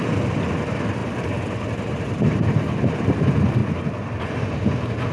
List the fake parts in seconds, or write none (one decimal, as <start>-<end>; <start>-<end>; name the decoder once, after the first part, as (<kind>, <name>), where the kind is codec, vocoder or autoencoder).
1.0-3.2 (vocoder, BigVGAN v2); 3.6-4.2